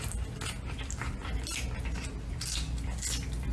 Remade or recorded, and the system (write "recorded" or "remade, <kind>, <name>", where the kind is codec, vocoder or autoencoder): recorded